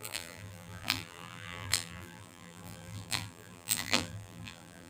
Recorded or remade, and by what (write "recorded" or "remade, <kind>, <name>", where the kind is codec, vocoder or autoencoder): remade, vocoder, BigVGAN v2